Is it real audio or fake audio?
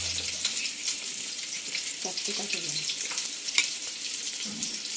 fake